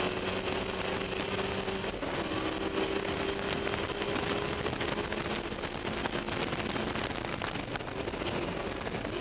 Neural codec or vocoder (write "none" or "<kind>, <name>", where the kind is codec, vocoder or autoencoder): none